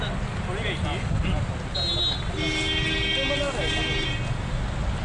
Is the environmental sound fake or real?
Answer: real